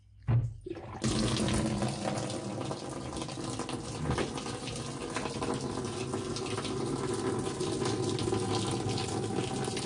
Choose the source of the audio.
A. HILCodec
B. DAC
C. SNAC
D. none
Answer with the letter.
D